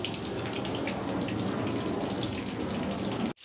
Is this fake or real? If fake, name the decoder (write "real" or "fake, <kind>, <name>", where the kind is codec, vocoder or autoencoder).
real